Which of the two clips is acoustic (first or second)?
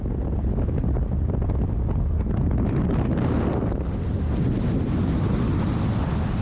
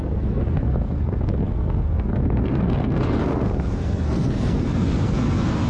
first